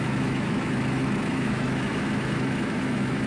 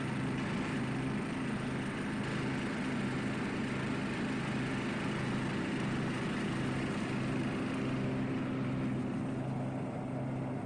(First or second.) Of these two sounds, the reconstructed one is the first